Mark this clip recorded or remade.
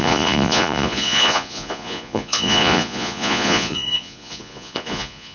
remade